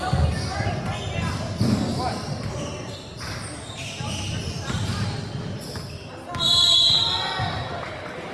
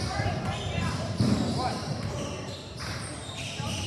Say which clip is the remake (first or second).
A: second